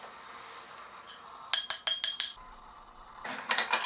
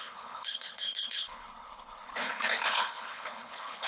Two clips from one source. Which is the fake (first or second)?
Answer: second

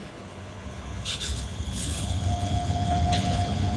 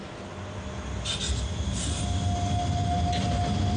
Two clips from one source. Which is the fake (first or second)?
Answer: first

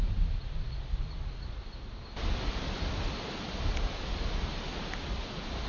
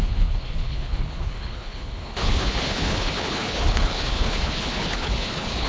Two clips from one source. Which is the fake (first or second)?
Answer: second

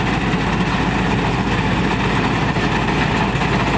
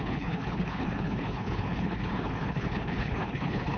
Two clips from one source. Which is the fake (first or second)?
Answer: second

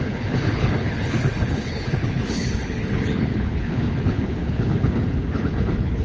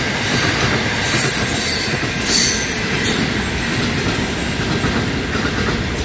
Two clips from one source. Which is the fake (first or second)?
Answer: first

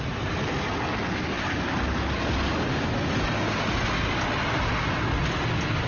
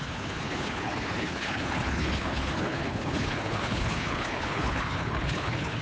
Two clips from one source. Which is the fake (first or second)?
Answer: second